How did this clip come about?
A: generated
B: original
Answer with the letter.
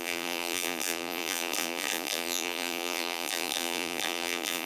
A